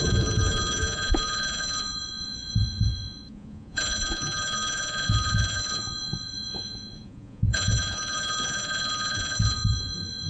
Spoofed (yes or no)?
yes